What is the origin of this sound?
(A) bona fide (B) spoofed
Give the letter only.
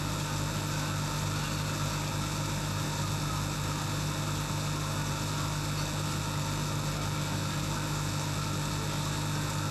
A